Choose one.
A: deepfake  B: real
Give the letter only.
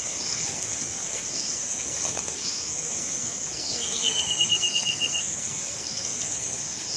A